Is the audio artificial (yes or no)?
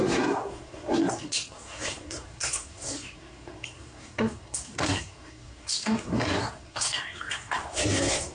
yes